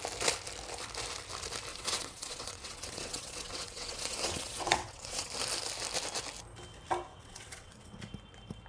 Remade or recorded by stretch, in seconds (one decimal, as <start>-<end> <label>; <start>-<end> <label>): 0.0-1.7 recorded; 1.7-5.3 remade; 5.3-7.1 recorded; 7.1-8.0 remade; 8.0-8.7 recorded